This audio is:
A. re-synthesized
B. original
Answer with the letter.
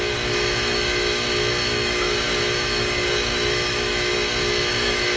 A